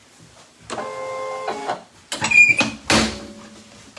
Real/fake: real